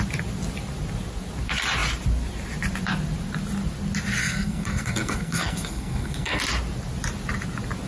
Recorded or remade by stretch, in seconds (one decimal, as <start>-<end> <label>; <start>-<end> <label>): 0.0-4.2 recorded; 4.2-6.4 remade; 6.4-7.9 recorded

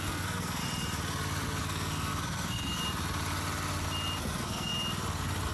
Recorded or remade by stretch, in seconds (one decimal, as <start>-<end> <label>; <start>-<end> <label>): 0.0-0.6 remade; 0.6-1.6 recorded; 1.6-2.8 remade; 2.8-4.2 recorded; 4.2-4.7 remade; 4.7-5.5 recorded

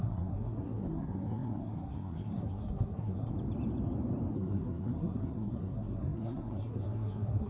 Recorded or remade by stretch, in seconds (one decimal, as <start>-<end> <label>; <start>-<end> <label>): 0.0-3.3 remade; 3.3-4.3 recorded; 4.3-7.5 remade

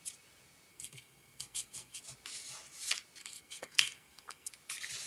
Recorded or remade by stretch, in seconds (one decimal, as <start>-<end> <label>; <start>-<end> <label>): 0.0-0.7 recorded; 0.7-2.0 remade; 2.0-3.2 recorded; 3.2-4.5 remade; 4.5-5.1 recorded